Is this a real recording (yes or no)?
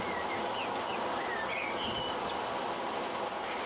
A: yes